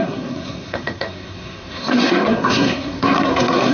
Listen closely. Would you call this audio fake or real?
fake